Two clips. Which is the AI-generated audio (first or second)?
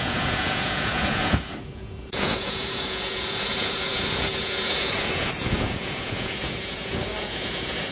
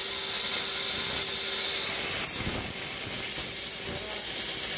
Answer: first